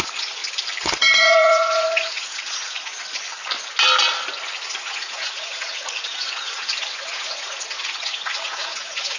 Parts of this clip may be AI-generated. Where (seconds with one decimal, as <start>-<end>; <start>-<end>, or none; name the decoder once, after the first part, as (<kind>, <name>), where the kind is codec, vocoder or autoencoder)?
0.0-0.4 (vocoder, Vocos); 1.0-2.9; 4.7-9.2